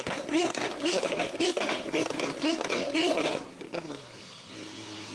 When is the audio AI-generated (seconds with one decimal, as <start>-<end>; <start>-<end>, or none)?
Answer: 0.0-5.1